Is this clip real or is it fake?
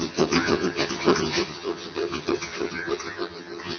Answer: fake